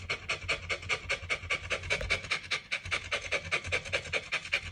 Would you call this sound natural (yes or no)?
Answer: yes